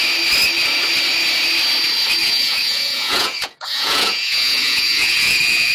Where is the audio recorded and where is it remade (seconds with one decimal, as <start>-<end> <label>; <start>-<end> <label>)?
0.0-2.2 recorded; 2.2-5.7 remade